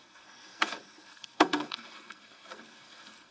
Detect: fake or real fake